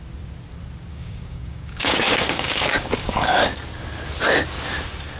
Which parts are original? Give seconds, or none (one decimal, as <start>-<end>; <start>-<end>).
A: 0.0-0.9; 3.6-5.2